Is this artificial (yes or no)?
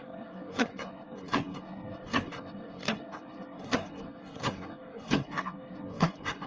yes